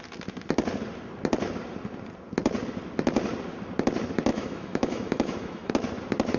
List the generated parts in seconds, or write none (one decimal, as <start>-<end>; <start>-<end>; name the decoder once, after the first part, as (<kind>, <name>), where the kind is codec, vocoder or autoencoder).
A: 4.3-5.7 (autoencoder, DAC-VAE)